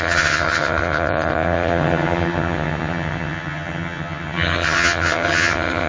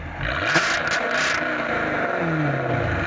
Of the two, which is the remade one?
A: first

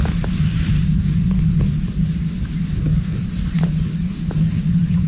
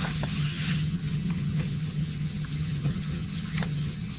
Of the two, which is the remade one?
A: second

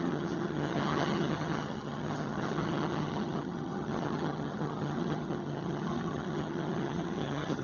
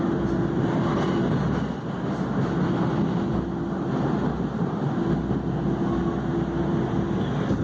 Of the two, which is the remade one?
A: first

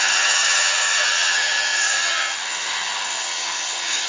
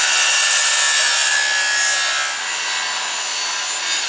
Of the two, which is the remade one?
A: first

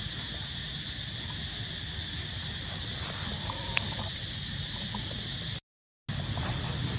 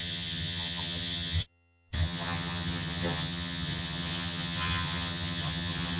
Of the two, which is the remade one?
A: second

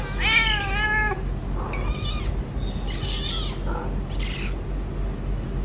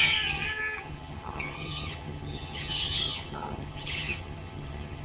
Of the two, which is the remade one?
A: second